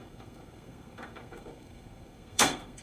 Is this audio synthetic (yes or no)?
yes